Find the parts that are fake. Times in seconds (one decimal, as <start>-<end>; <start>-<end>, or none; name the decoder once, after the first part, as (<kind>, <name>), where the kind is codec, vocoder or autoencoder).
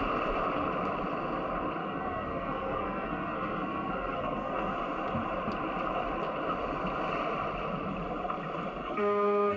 1.8-4.7 (codec, SNAC); 8.8-9.6